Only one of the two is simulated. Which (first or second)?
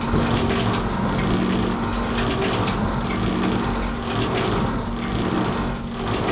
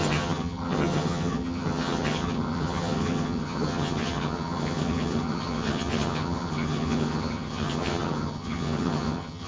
second